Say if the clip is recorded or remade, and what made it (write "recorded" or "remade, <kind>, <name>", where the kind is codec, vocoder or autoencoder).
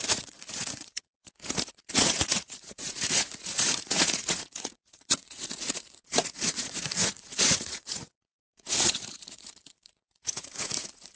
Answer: remade, vocoder, Vocos